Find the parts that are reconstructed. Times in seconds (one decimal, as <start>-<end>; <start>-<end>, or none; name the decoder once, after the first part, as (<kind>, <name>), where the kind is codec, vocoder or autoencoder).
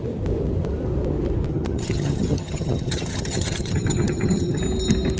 1.5-4.6 (vocoder, HiFi-GAN)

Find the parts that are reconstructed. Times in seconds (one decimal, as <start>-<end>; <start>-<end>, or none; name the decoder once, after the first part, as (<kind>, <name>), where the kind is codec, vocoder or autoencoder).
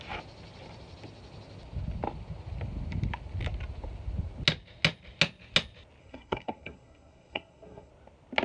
6.0-7.9 (codec, SNAC)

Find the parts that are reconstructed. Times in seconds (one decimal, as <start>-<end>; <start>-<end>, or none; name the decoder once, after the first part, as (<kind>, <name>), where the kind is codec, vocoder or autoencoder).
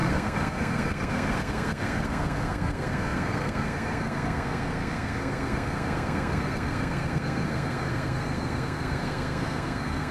0.0-10.1 (codec, SNAC)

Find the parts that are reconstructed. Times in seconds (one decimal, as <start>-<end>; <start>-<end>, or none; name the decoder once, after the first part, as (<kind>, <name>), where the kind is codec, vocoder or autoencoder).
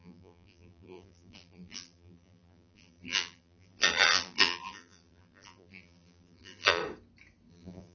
0.0-6.8 (vocoder, BigVGAN v2); 7.5-7.9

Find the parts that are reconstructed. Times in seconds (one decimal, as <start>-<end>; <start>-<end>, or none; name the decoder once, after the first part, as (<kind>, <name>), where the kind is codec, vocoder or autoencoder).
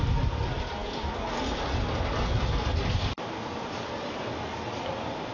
none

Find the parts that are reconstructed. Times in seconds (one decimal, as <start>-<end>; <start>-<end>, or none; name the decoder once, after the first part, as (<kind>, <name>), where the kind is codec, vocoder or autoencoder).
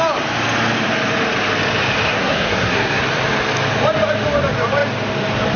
2.1-3.0 (codec, SNAC)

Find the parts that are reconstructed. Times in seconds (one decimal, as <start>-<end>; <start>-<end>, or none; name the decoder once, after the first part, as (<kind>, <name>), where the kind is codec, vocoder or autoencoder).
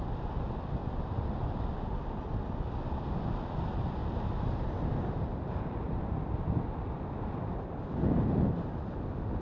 none